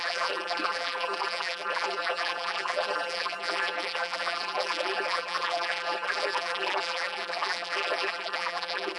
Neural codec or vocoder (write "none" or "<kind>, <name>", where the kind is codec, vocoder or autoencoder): vocoder, BigVGAN v2